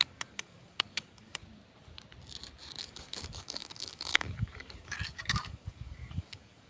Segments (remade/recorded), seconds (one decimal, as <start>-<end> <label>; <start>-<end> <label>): 0.0-1.4 remade; 1.4-2.8 recorded; 2.8-6.7 remade